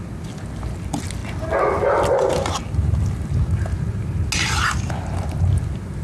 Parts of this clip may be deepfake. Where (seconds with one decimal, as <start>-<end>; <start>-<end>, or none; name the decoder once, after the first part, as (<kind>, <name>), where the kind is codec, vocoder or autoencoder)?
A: none